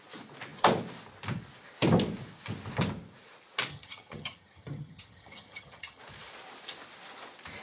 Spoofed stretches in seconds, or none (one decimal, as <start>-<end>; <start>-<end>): 3.7-6.0